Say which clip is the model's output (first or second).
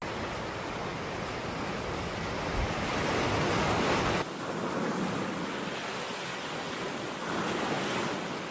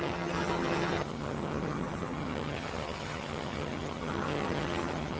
second